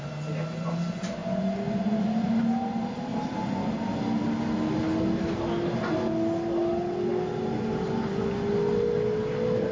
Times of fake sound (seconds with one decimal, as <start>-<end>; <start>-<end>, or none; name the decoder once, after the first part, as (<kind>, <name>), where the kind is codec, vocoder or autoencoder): none